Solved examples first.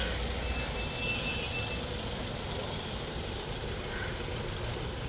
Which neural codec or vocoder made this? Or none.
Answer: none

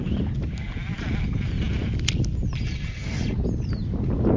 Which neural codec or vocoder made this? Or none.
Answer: none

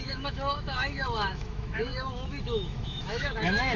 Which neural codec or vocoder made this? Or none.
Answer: autoencoder, DAC-VAE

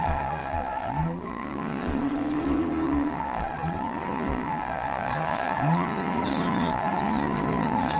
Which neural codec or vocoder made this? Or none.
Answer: vocoder, Vocos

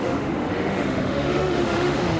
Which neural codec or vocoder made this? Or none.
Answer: autoencoder, DAC-VAE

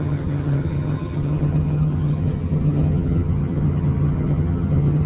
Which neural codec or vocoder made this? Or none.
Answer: vocoder, HiFi-GAN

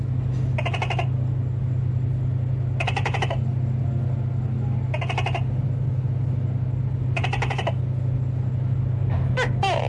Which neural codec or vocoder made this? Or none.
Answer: none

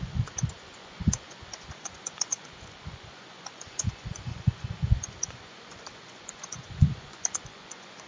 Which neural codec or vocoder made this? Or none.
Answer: vocoder, Vocos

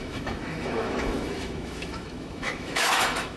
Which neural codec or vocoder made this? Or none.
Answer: autoencoder, DAC-VAE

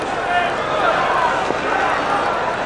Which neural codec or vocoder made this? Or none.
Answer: none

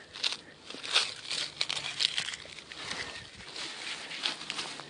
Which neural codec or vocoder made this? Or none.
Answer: none